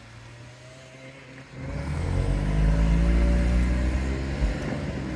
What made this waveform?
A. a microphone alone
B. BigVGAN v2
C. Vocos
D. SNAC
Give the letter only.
A